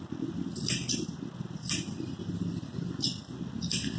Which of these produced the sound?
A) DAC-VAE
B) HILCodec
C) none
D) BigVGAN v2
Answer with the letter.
C